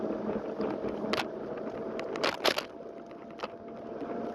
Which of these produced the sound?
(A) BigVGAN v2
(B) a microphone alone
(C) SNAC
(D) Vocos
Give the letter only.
B